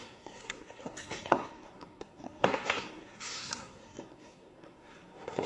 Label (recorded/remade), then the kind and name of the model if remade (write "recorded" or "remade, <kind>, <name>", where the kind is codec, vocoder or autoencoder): remade, codec, SNAC